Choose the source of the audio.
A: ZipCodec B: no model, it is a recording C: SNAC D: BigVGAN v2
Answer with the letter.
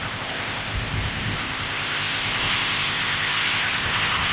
A